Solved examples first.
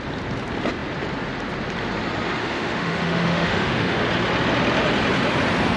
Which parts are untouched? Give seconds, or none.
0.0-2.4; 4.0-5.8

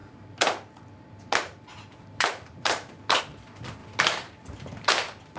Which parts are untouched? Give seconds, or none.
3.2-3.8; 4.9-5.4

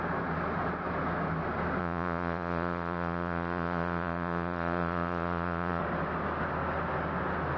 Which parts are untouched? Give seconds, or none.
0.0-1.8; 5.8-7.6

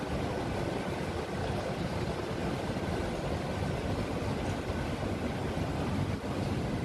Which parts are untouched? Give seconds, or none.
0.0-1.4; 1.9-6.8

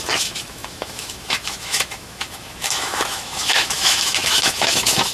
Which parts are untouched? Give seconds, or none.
none

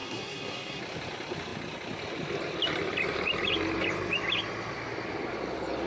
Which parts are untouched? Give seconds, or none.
0.8-5.9

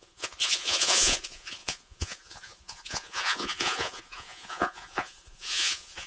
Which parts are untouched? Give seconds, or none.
none